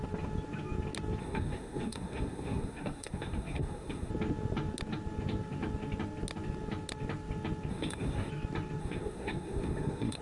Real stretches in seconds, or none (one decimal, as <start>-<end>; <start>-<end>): 0.0-1.2; 4.1-7.7; 8.3-8.8